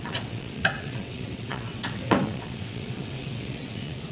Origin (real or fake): fake